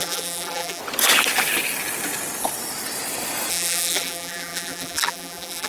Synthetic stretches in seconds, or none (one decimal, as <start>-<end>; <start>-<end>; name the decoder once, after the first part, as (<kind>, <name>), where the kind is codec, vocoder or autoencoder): 0.0-0.8 (vocoder, BigVGAN v2); 3.5-5.7